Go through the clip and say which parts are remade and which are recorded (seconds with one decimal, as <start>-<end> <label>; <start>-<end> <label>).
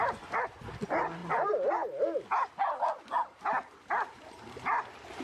0.0-5.2 recorded